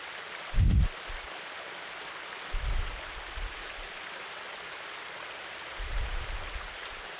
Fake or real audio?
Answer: real